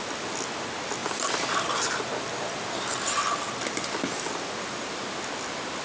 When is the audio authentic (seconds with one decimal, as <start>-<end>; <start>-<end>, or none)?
0.0-5.8